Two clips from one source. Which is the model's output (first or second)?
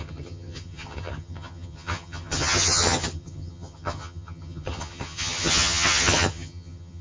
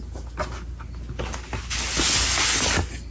first